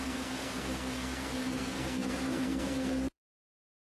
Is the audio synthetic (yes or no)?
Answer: yes